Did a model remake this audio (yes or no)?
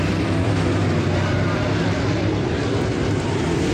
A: yes